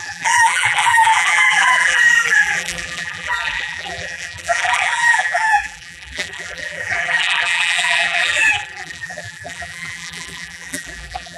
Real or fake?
fake